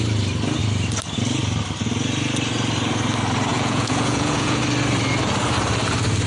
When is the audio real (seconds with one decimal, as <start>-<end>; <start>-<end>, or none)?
0.0-3.5; 4.6-6.3